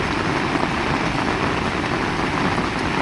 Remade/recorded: recorded